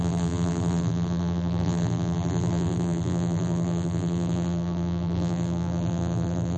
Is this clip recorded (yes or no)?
no